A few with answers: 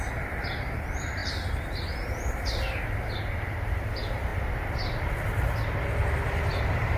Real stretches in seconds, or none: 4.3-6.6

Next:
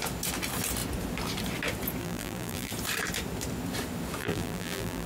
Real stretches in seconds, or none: 0.0-2.0; 2.7-4.2

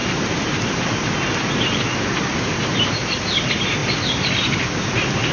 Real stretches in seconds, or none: 0.0-5.3

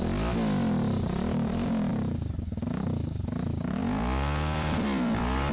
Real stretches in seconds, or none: 0.0-3.8

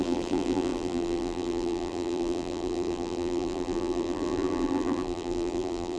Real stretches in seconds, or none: none

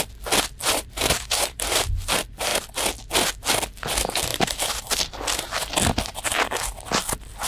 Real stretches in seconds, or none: 0.0-0.6; 2.1-4.3; 4.9-7.5

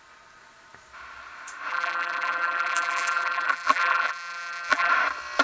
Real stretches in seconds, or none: 0.0-1.7; 4.9-5.4

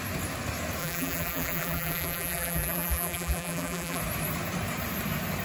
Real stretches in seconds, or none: 0.0-0.8; 4.0-5.4